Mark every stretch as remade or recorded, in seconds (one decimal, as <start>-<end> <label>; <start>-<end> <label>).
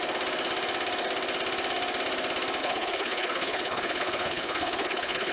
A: 0.0-2.6 recorded; 2.6-5.3 remade